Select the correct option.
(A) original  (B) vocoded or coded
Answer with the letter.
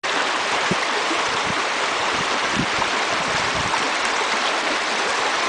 A